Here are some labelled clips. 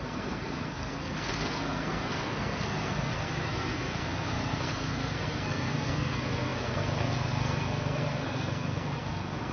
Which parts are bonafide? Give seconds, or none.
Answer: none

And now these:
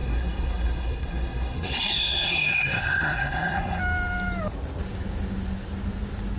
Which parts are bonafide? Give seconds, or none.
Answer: 3.8-6.4

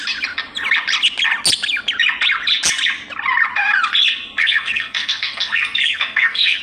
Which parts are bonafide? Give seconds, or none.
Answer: 0.0-4.4